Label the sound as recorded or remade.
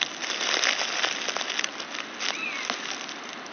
recorded